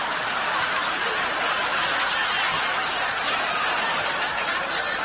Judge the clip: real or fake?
real